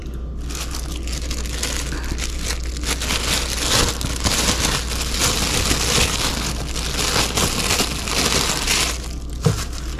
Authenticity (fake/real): real